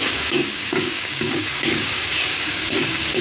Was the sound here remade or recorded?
remade